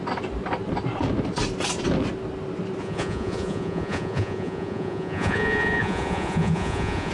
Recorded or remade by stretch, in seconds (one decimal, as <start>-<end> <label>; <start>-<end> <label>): 0.0-2.8 recorded; 2.8-7.1 remade